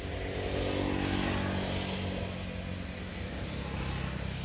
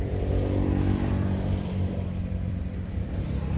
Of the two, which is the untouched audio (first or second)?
first